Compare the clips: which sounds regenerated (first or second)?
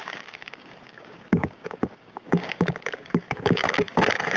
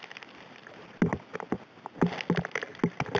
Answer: first